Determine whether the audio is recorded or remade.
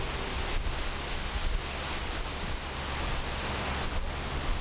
recorded